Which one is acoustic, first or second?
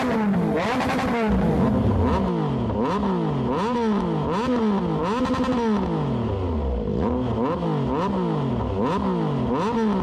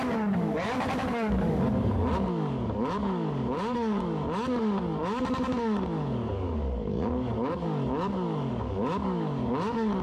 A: first